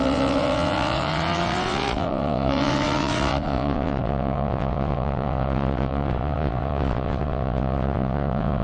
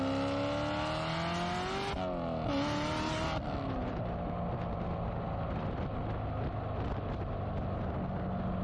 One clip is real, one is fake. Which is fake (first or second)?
first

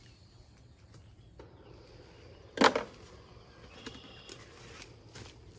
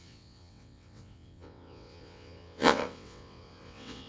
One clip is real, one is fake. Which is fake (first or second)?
second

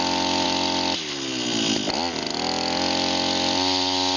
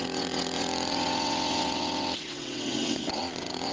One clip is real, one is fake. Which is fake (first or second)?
second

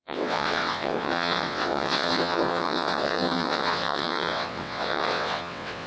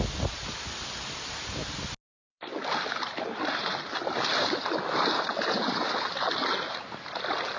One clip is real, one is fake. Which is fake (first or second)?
first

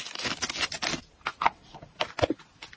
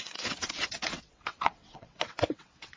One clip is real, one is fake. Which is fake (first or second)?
second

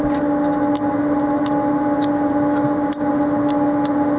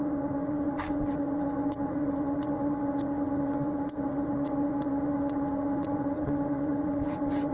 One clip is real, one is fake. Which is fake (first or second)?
second